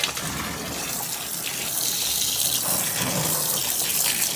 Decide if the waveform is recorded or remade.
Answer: recorded